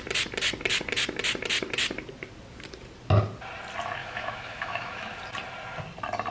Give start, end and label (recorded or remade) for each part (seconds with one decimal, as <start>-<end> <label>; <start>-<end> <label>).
0.0-4.0 recorded; 4.0-5.2 remade; 5.2-6.3 recorded